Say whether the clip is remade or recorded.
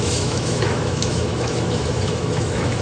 remade